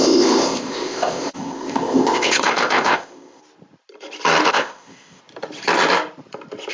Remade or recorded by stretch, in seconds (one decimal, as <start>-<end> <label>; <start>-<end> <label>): 0.0-3.4 remade; 3.4-4.5 recorded; 4.5-5.2 remade; 5.2-6.7 recorded